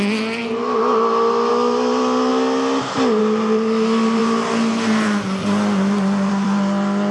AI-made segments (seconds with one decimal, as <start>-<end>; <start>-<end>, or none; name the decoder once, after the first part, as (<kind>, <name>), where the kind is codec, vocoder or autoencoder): 0.0-0.4 (vocoder, BigVGAN v2); 1.5-2.3; 3.2-4.2; 6.3-7.1